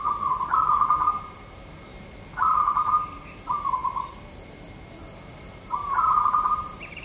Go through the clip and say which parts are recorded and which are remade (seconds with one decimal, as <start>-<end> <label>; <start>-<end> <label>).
0.0-1.2 recorded; 1.2-1.9 remade; 1.9-2.6 recorded; 2.6-3.8 remade; 3.8-4.9 recorded; 4.9-7.0 remade